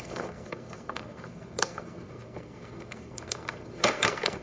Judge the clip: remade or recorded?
remade